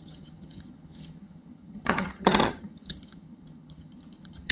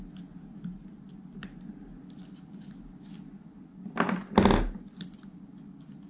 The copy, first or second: first